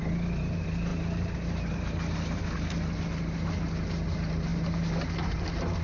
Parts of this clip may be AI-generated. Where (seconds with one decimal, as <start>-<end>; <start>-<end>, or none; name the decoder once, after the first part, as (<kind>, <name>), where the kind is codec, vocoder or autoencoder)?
none